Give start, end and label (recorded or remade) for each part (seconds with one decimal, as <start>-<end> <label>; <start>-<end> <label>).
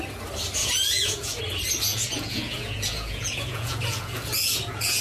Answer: 0.0-0.6 recorded; 0.6-1.4 remade; 1.4-1.9 recorded; 1.9-5.0 remade